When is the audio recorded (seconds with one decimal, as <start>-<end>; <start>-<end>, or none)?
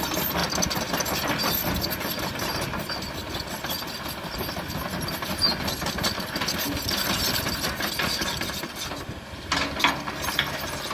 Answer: 0.0-10.9